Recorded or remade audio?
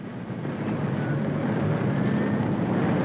recorded